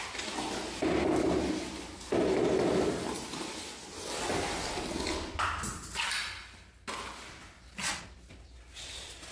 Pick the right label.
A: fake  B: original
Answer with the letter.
B